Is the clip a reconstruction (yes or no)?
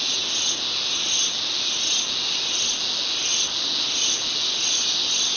no